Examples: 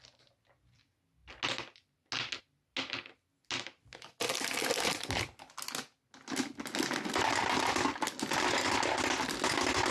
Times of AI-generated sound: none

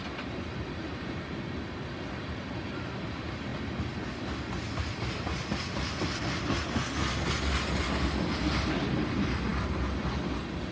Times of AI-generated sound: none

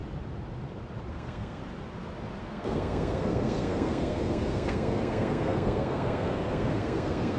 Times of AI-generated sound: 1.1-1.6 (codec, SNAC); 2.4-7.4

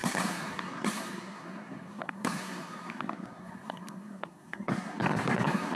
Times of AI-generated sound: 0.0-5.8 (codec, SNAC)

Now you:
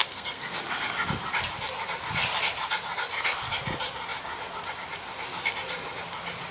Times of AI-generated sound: 0.0-0.6 (codec, SNAC)

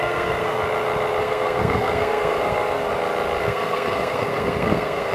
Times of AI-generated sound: 0.0-0.6 (codec, SNAC); 1.2-2.9; 3.4-5.1

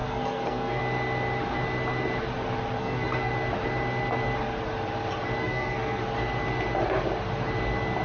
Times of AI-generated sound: 0.0-0.8 (codec, SNAC); 2.8-3.3; 5.4-6.0

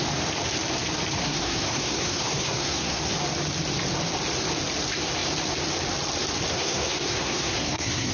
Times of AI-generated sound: 1.2-3.0 (codec, SNAC); 6.5-8.1